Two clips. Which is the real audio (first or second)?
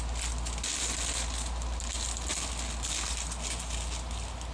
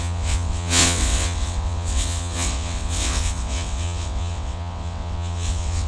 first